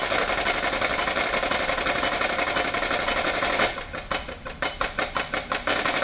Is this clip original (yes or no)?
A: yes